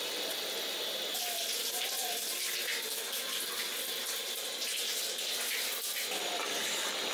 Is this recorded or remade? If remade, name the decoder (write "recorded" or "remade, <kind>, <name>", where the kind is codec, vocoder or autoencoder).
recorded